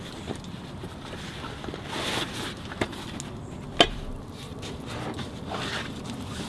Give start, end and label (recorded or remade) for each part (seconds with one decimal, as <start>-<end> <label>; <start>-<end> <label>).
0.0-6.5 recorded